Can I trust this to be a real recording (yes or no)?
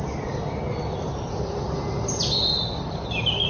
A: yes